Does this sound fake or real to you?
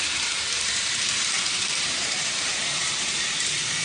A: fake